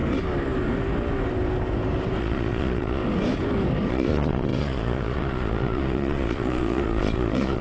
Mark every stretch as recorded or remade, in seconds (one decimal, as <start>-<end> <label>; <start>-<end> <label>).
0.0-2.2 recorded; 2.2-3.0 remade; 3.0-3.9 recorded; 3.9-7.6 remade